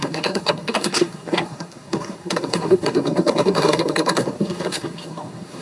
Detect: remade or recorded remade